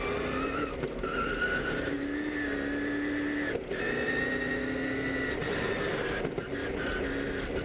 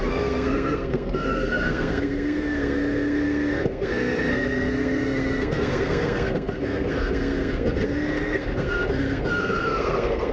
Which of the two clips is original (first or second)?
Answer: first